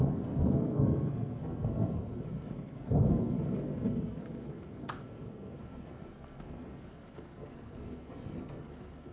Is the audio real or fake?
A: fake